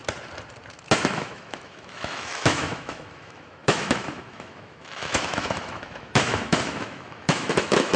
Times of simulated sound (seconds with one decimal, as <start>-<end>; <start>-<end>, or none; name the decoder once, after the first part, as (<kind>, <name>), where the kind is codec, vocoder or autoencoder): 1.1-8.0 (autoencoder, DAC-VAE)